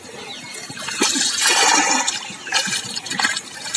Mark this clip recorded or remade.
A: recorded